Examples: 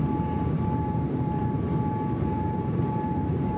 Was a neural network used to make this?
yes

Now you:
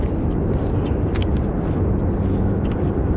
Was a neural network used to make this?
no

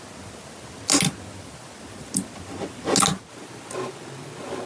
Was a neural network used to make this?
no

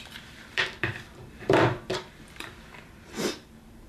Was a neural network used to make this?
yes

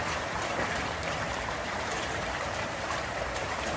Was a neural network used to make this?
yes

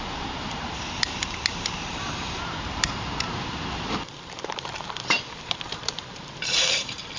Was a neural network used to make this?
yes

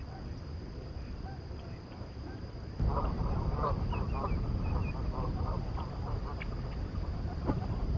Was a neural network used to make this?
yes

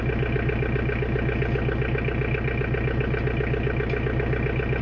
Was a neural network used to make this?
no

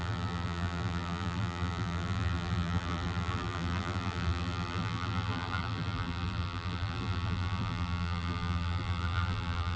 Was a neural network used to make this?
yes